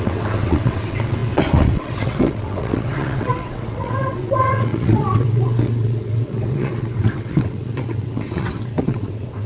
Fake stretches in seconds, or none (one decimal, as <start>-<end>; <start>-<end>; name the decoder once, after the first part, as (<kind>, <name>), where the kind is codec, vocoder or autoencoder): 0.0-9.5 (vocoder, WaveNeXt)

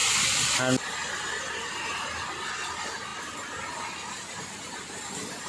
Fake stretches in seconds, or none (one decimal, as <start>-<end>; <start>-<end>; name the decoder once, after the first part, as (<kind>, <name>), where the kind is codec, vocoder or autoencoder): none

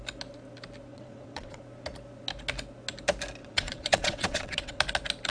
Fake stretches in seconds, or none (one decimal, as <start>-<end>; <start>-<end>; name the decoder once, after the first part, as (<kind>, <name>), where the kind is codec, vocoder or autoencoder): 0.9-1.6 (vocoder, WaveNeXt); 3.4-4.8

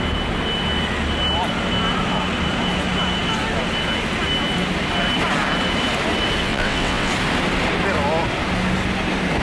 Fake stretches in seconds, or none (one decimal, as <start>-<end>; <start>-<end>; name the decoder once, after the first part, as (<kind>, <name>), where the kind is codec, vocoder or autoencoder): 6.4-7.1 (vocoder, WaveNeXt)

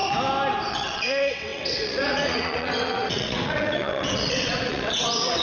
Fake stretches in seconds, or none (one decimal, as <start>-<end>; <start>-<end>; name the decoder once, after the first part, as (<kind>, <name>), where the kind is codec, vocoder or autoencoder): 0.7-5.4 (vocoder, WaveNeXt)